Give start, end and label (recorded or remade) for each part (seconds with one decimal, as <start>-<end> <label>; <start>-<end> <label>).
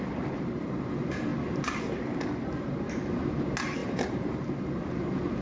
0.0-3.8 recorded; 3.8-4.9 remade; 4.9-5.4 recorded